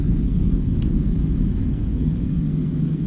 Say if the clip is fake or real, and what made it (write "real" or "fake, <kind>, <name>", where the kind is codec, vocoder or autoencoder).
fake, codec, SNAC